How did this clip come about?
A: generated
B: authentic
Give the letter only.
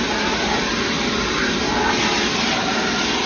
B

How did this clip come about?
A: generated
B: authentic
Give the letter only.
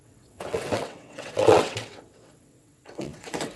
A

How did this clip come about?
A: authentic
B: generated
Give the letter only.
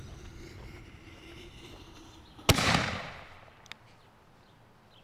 A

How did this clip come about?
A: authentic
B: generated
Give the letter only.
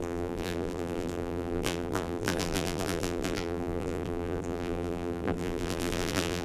B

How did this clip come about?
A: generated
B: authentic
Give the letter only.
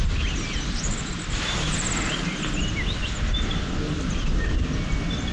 B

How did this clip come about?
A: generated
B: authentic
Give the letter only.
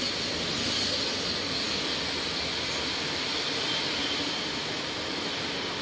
B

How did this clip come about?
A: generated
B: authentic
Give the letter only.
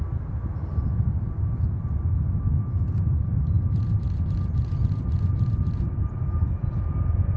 B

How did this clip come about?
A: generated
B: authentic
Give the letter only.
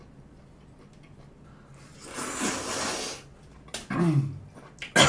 B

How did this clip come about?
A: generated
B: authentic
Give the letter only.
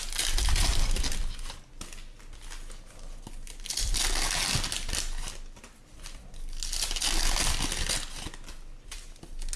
B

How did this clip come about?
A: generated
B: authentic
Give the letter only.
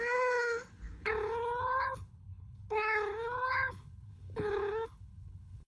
A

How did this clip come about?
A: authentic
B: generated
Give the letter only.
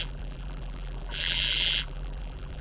B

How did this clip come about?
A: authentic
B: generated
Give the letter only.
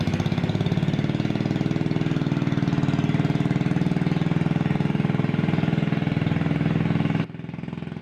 A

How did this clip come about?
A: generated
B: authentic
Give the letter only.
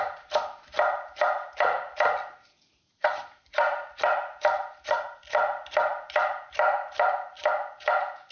B